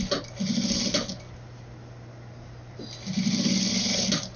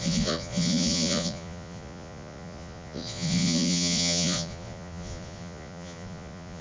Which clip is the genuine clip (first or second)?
first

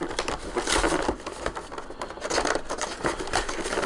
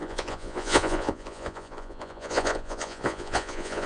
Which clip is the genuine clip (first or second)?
first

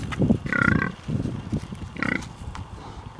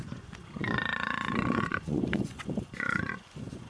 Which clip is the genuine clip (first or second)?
first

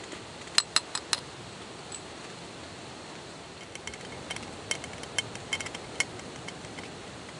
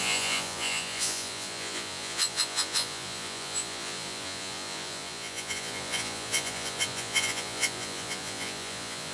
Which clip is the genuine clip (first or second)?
first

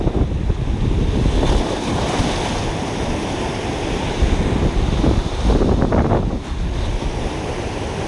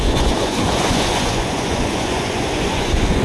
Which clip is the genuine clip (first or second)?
first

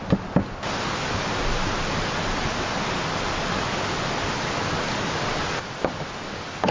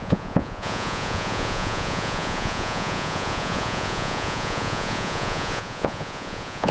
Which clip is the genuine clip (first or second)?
first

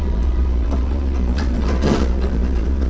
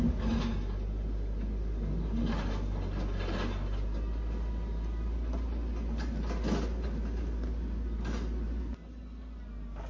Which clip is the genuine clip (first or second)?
second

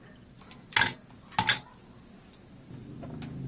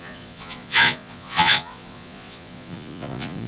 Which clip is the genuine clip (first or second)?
first